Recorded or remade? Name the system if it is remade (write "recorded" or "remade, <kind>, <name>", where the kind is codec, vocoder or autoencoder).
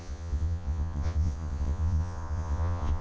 remade, vocoder, Vocos